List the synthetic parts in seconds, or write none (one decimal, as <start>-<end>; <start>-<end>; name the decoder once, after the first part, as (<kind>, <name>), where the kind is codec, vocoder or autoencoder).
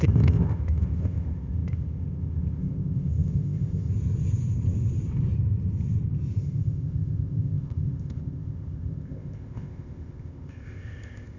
0.0-3.9 (codec, ZipCodec); 6.4-11.4